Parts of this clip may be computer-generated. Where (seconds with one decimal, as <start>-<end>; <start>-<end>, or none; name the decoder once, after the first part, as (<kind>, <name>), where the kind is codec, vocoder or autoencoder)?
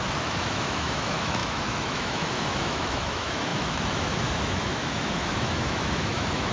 0.0-6.5 (autoencoder, DAC-VAE)